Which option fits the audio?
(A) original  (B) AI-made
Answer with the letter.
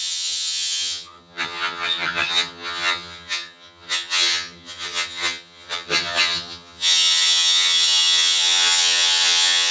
B